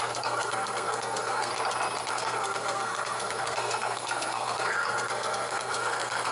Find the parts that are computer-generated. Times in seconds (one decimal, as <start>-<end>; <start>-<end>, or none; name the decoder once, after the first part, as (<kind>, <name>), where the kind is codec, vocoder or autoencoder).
0.0-1.5 (codec, SNAC); 2.1-6.3